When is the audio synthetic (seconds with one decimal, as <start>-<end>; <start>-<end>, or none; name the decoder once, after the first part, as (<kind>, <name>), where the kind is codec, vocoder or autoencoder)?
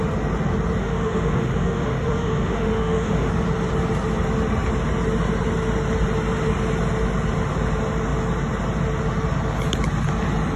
0.8-3.3 (autoencoder, DAC-VAE)